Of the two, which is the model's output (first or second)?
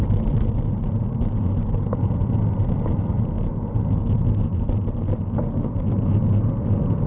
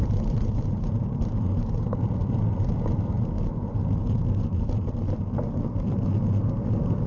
second